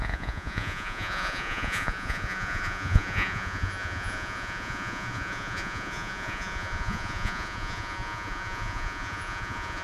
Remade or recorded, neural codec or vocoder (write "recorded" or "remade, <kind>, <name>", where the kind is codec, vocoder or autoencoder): remade, vocoder, Vocos